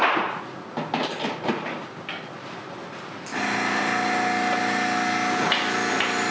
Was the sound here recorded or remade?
recorded